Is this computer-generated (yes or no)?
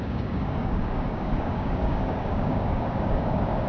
yes